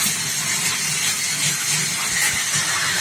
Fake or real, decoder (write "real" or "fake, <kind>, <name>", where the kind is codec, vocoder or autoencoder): real